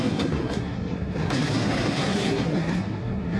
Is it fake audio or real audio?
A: fake